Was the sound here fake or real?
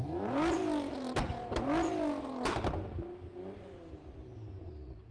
real